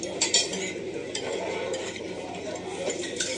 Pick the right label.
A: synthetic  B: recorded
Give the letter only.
B